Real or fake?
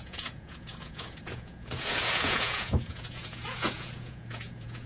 fake